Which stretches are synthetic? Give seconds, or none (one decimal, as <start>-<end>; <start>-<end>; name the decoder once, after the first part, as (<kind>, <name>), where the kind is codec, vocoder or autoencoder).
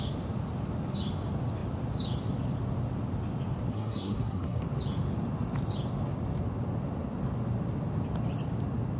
3.7-4.6 (codec, SNAC)